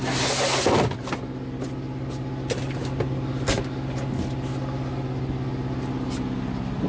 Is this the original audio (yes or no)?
yes